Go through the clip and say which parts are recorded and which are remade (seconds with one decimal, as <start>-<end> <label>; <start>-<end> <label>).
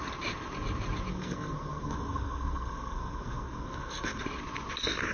0.0-1.1 recorded; 1.1-4.2 remade; 4.2-5.1 recorded